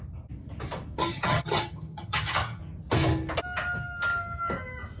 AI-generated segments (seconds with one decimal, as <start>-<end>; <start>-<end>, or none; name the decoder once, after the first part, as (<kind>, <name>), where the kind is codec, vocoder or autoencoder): 1.0-2.6 (vocoder, HiFi-GAN)